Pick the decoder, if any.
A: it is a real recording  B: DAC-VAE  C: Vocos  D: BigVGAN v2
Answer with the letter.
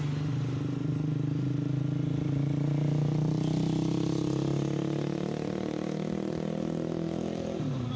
A